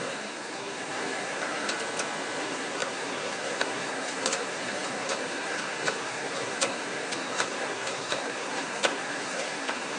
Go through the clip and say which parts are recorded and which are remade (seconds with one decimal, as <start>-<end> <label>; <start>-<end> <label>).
0.0-1.7 remade; 1.7-2.4 recorded; 2.4-10.0 remade